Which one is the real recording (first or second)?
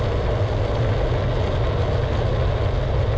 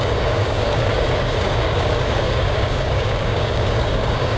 first